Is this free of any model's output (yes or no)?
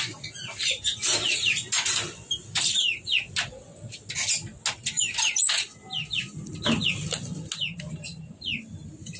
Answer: yes